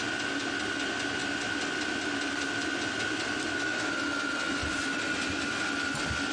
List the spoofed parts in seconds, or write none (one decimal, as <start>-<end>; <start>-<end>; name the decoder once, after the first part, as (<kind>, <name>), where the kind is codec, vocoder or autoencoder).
none